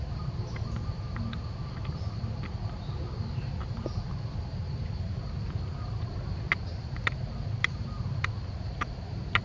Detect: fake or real real